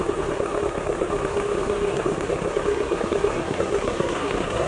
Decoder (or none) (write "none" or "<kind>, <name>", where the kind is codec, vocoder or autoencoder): codec, SNAC